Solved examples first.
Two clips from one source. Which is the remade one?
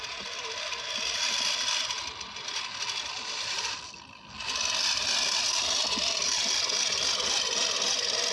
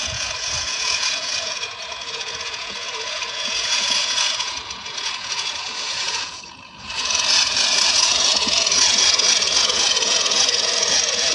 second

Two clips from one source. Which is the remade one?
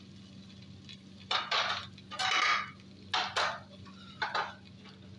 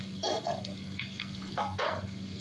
second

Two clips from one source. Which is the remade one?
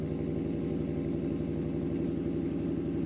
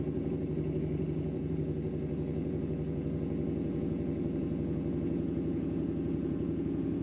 second